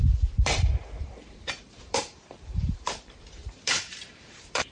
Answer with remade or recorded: remade